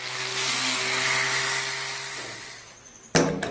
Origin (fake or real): real